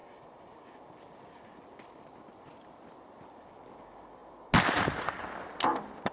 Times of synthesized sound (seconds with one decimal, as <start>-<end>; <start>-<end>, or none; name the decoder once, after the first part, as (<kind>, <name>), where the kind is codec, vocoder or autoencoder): none